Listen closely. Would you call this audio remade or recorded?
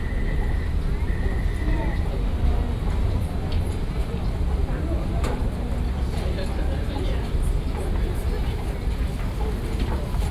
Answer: recorded